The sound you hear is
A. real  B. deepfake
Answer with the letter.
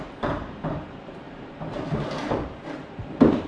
B